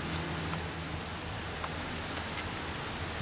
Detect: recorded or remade recorded